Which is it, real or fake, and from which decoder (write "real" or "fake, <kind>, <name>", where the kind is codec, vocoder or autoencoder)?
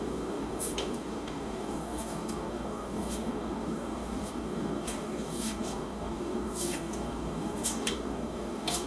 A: fake, codec, DAC